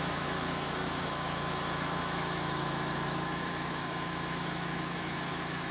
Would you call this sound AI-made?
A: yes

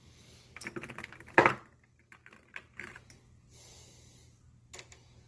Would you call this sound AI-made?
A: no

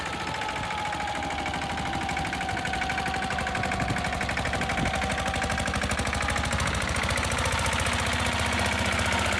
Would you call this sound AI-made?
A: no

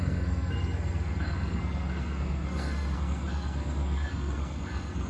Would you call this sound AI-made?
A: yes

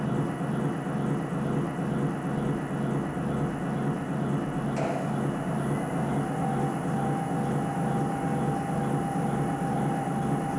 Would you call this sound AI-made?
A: no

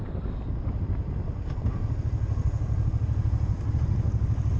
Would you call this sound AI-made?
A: no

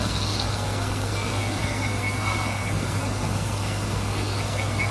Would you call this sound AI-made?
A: yes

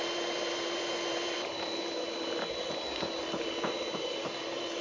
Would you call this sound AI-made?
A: yes